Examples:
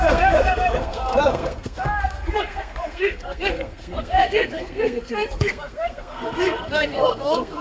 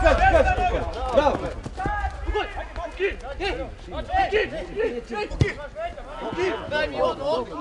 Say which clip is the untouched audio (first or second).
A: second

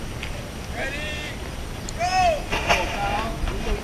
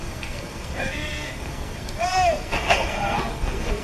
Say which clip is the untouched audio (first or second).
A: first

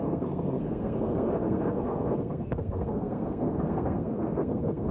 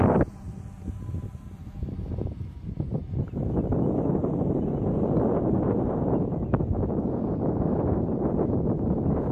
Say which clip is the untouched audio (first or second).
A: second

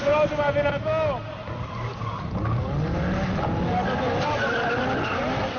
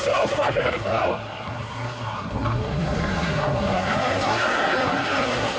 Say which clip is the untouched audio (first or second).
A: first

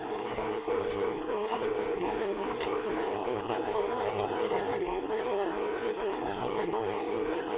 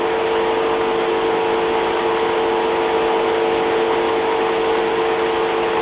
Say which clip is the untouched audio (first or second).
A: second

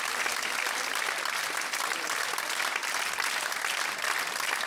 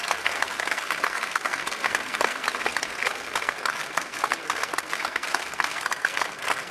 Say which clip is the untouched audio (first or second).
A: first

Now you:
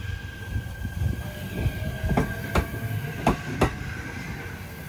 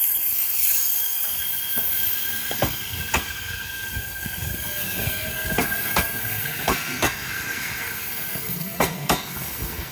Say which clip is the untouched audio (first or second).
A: first